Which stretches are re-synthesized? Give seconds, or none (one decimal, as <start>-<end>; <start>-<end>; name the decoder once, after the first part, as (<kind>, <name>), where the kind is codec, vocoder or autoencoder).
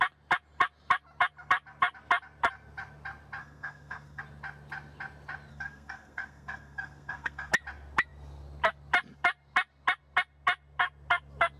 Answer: 3.4-4.2 (codec, SNAC); 5.5-7.5